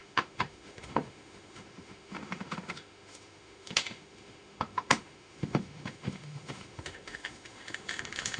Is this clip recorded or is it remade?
remade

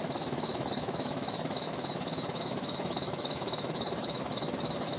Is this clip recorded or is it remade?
remade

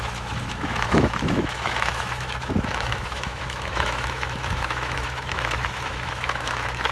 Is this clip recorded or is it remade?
remade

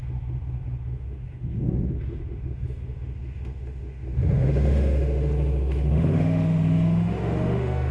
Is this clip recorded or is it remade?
remade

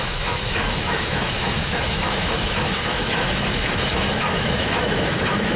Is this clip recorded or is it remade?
remade